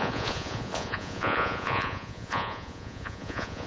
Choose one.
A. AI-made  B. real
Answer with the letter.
A